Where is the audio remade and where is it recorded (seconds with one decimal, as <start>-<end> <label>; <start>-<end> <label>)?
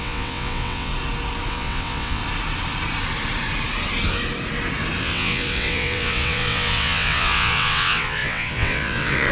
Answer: 0.0-0.9 remade; 0.9-1.5 recorded; 1.5-2.2 remade; 2.2-5.0 recorded; 5.0-9.3 remade